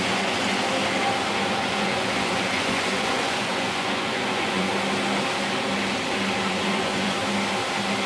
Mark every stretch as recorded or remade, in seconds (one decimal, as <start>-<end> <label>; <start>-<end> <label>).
0.0-0.6 remade; 0.6-1.5 recorded; 1.5-4.7 remade; 4.7-6.5 recorded; 6.5-7.2 remade; 7.2-8.1 recorded